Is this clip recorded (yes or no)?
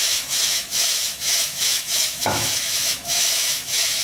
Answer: no